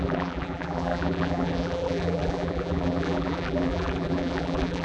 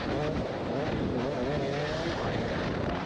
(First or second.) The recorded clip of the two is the second